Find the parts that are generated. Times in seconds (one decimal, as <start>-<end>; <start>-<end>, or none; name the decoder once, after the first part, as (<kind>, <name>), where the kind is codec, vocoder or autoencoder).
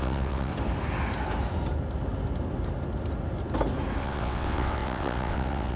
0.0-0.5 (vocoder, WaveNeXt); 4.0-5.8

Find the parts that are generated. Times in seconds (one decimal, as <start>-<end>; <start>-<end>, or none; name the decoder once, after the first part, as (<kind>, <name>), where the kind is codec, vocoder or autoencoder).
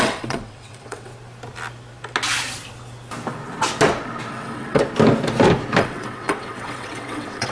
0.0-1.1 (vocoder, WaveNeXt); 4.3-4.8; 5.8-7.5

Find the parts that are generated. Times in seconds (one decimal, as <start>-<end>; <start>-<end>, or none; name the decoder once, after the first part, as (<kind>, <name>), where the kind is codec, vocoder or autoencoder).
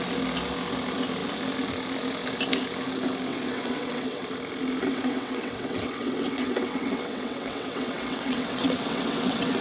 3.3-4.2 (vocoder, WaveNeXt); 4.8-9.6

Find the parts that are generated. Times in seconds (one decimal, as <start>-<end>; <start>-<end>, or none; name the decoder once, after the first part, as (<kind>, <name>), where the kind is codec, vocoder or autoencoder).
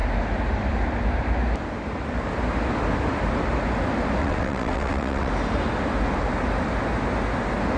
4.2-5.3 (vocoder, WaveNeXt)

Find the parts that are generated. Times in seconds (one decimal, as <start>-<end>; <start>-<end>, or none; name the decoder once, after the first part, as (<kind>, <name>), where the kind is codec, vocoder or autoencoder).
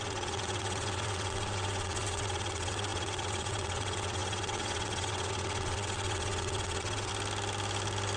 0.0-7.1 (vocoder, WaveNeXt)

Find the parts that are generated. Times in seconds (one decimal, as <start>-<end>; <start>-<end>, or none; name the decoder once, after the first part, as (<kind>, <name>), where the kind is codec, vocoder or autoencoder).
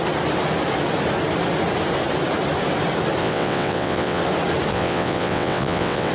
3.2-4.2 (vocoder, WaveNeXt); 4.7-6.1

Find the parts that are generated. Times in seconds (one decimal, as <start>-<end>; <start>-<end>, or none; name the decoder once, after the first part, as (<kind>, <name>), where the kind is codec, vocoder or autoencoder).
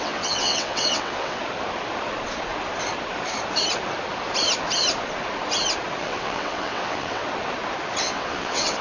0.0-1.4 (vocoder, WaveNeXt); 6.0-7.2; 8.0-8.8